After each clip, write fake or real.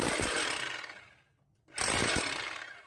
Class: real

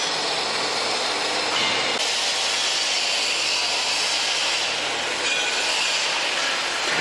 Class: real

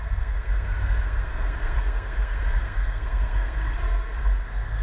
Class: fake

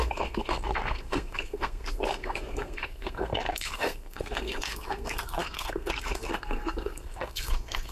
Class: fake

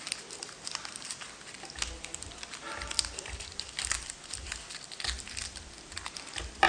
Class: real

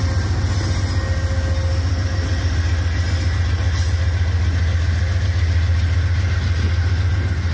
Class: real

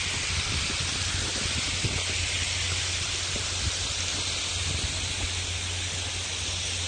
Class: real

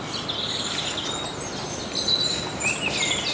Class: real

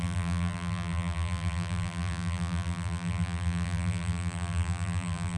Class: fake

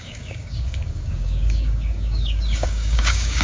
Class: fake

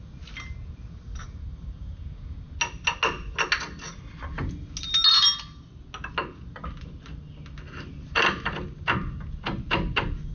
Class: real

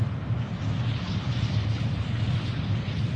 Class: real